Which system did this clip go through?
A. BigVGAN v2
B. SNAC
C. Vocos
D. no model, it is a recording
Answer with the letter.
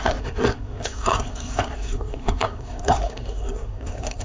B